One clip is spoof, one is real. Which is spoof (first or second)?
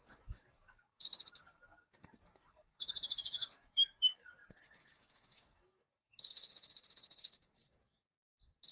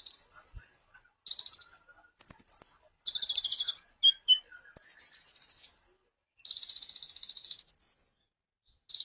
first